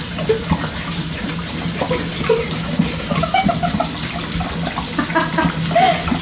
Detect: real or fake real